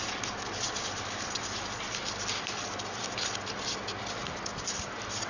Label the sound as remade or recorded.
recorded